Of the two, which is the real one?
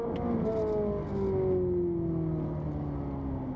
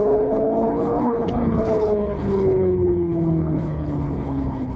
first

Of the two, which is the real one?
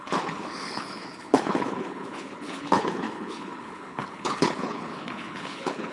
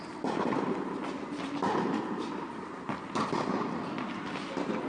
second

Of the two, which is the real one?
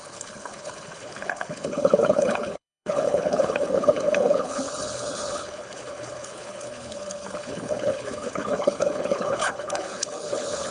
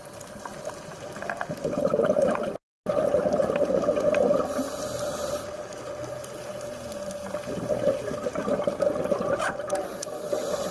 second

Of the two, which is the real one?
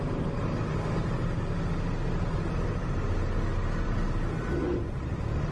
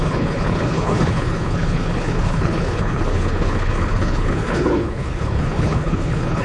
first